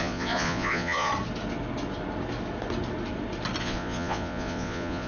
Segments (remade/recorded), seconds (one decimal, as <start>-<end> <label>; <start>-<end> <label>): 0.0-1.1 remade; 1.1-3.6 recorded; 3.6-5.1 remade